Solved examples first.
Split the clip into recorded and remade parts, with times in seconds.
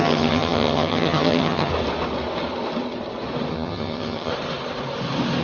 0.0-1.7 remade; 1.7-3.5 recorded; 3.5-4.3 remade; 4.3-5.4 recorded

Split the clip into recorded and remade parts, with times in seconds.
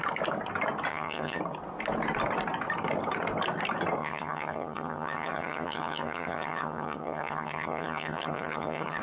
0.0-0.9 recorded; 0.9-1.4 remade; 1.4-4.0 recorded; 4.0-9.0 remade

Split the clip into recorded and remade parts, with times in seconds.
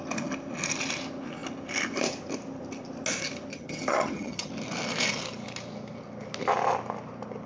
0.0-3.5 recorded; 3.5-4.5 remade; 4.5-7.5 recorded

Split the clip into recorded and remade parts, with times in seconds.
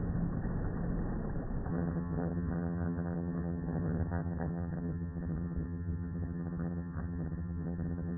0.0-1.7 recorded; 1.7-8.2 remade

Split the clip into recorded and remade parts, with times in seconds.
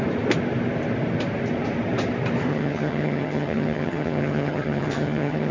0.0-2.5 recorded; 2.5-5.5 remade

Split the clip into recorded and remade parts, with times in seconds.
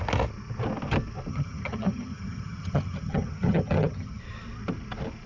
0.0-1.3 recorded; 1.3-4.2 remade; 4.2-5.3 recorded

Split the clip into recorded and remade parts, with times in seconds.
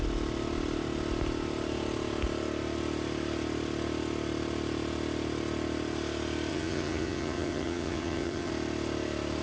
0.0-6.5 recorded; 6.5-8.5 remade; 8.5-9.4 recorded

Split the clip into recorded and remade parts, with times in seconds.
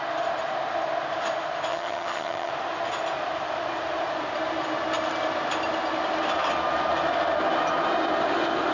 0.0-1.7 recorded; 1.7-2.5 remade; 2.5-8.7 recorded